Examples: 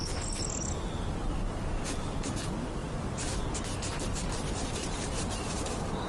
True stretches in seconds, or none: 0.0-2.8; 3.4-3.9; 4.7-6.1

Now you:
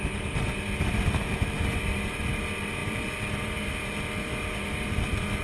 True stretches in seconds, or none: 0.0-5.4

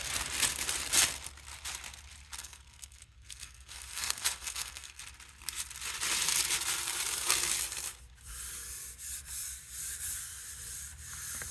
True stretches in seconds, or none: 0.0-2.4; 5.0-11.5

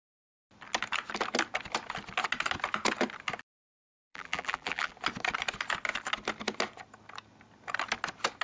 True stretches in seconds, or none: 0.0-4.1; 4.9-8.4

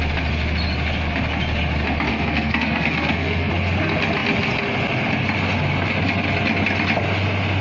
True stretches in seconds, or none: 0.0-2.1; 3.5-7.6

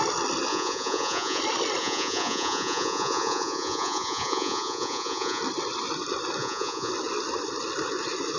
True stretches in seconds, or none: 0.0-0.5; 1.4-1.8; 5.4-6.4; 6.9-8.4

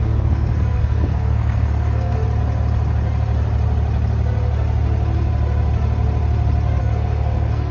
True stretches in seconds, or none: 2.2-6.8

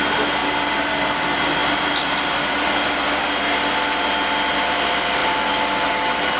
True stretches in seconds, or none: 0.0-6.4